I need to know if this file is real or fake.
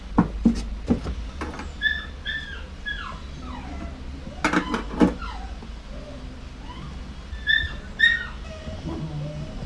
real